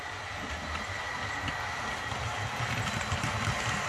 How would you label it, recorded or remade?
recorded